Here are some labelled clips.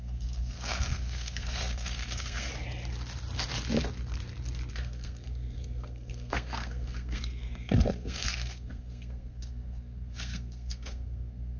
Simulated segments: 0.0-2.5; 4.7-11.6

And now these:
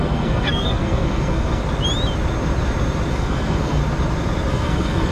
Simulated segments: 0.0-1.6; 3.1-3.8; 4.5-5.1

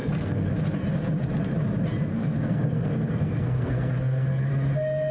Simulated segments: 0.0-0.5; 2.1-4.5

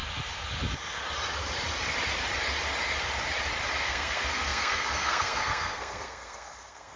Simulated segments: 3.8-7.0

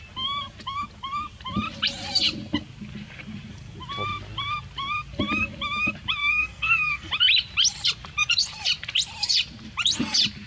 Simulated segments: 6.2-7.1

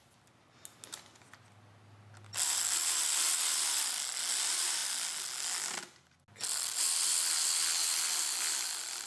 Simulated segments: none

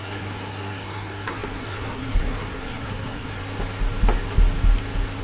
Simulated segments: 0.0-3.4

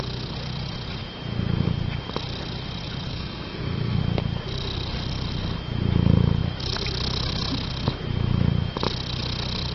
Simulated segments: 3.1-4.0